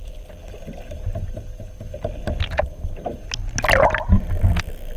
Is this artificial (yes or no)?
no